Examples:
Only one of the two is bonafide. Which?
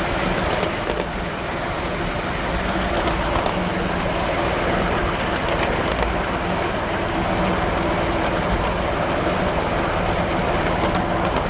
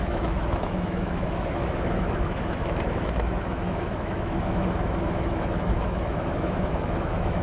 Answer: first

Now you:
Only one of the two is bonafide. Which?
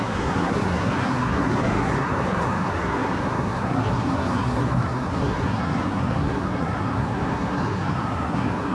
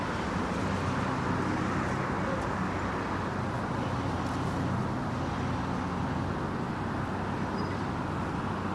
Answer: second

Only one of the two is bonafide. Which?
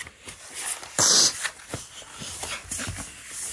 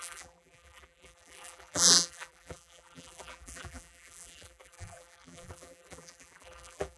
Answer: first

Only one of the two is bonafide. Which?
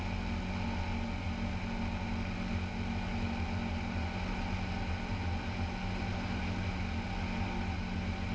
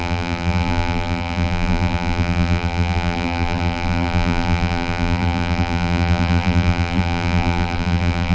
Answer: first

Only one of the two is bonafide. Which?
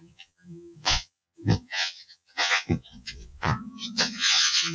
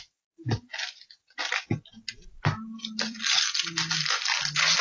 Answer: second